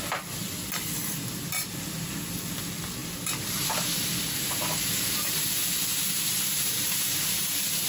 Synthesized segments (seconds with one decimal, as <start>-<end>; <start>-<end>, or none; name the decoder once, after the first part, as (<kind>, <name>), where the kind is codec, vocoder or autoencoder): 3.0-7.5 (vocoder, BigVGAN v2)